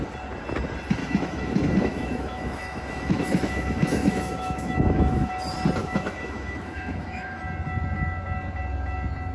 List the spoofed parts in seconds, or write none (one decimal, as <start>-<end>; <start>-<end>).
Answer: 1.0-5.3; 5.8-7.4